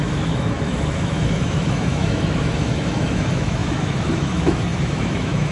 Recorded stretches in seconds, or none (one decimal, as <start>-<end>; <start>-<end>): none